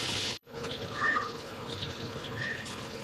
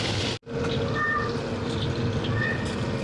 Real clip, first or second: second